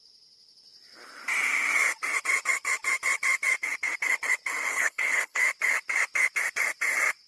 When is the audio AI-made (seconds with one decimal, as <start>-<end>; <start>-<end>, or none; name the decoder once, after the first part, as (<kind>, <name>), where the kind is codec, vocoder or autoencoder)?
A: 4.7-5.4 (codec, HILCodec)